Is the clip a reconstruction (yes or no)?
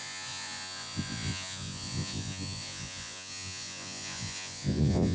yes